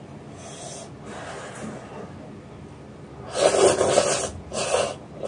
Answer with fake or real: real